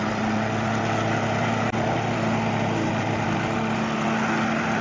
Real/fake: real